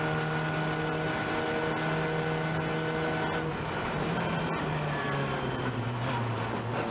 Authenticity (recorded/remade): recorded